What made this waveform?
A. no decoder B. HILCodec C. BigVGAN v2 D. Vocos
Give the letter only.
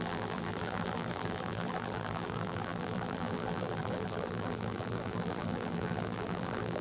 C